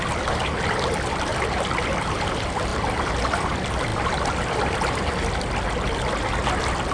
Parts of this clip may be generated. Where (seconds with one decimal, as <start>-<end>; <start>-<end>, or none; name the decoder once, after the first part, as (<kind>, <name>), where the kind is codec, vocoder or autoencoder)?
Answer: none